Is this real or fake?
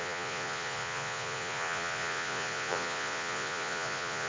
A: fake